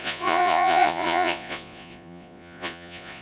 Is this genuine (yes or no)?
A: no